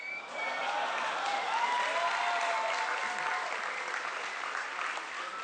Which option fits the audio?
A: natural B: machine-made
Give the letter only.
A